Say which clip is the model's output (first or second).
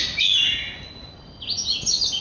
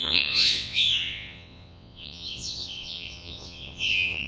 second